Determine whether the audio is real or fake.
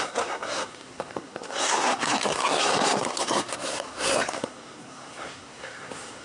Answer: fake